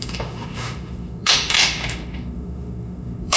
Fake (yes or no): yes